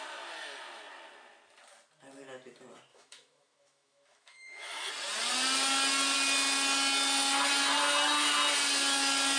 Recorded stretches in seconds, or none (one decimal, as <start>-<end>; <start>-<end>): 0.0-2.9; 4.9-9.4

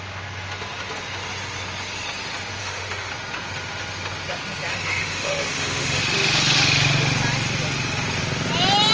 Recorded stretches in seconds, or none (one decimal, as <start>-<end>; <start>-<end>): 0.0-2.6; 3.1-4.7; 6.0-8.9

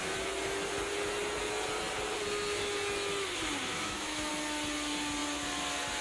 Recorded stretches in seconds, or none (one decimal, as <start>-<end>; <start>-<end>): 0.0-3.7; 4.3-6.0

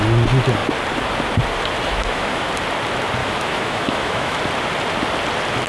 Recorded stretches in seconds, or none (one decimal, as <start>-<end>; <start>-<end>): 0.0-1.9; 2.5-3.2; 4.4-5.7

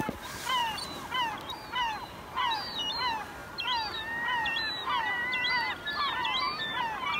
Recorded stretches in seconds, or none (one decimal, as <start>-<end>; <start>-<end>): 0.0-7.2

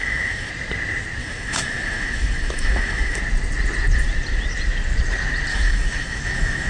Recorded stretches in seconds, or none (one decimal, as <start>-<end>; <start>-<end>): 0.5-1.2; 3.2-5.5

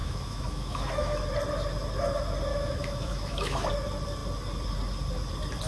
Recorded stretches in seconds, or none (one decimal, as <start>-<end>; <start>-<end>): 1.2-2.5; 3.7-5.7

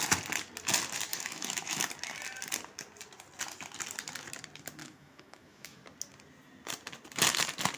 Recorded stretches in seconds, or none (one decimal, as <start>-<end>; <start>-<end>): 0.0-1.1; 1.9-4.8; 5.8-7.8